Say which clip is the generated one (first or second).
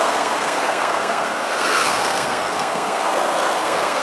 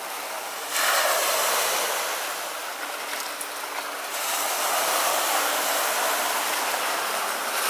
first